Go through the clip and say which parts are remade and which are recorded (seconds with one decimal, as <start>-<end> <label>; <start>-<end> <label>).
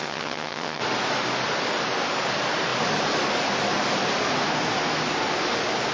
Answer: 0.0-0.8 remade; 0.8-5.9 recorded